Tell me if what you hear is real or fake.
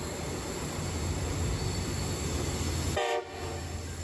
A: real